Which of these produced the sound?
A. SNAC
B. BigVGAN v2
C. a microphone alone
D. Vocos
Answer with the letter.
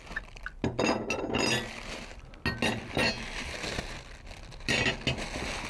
C